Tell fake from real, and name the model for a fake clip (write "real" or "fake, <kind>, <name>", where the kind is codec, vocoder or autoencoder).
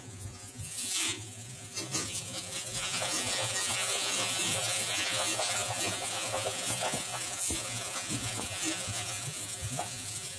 fake, vocoder, Vocos